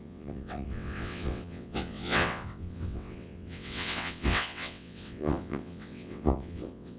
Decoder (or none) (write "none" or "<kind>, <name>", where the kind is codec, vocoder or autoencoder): vocoder, WaveNeXt